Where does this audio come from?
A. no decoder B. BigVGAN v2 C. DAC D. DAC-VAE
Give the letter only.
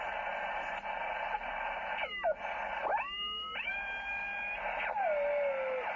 A